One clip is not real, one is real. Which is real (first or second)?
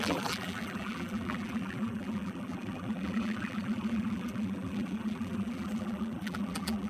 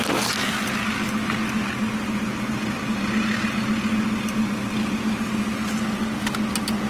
second